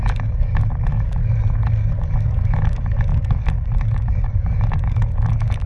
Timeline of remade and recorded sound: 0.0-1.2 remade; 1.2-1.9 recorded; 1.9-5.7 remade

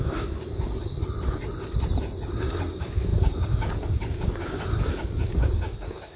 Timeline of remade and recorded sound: 0.0-1.0 remade; 1.0-2.3 recorded; 2.3-6.2 remade

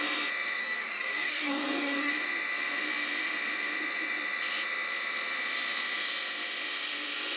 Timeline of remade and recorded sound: 0.0-0.6 recorded; 0.6-2.1 remade; 2.1-7.4 recorded

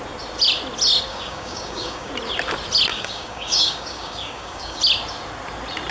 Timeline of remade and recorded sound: 0.0-1.1 recorded; 1.1-2.1 remade; 2.1-2.9 recorded; 2.9-4.8 remade; 4.8-5.9 recorded

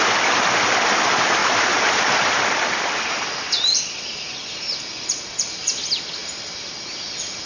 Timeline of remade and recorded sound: 0.0-7.5 recorded